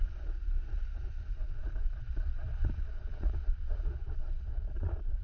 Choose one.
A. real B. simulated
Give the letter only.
B